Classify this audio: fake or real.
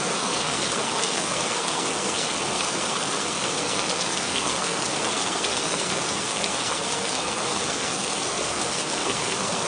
fake